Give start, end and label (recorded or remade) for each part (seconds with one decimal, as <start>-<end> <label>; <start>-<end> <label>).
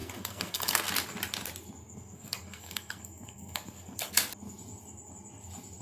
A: 0.0-0.9 remade; 0.9-1.8 recorded; 1.8-4.3 remade; 4.3-5.8 recorded